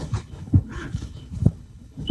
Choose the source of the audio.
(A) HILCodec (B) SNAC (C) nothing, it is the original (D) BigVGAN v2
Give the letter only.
A